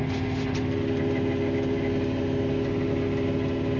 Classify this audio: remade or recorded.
recorded